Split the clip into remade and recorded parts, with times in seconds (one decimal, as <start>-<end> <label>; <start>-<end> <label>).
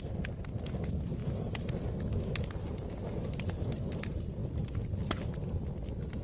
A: 0.0-1.2 recorded; 1.2-1.8 remade; 1.8-6.2 recorded